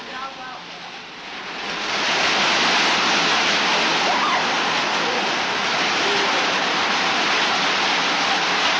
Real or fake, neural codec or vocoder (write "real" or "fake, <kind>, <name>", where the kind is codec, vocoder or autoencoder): real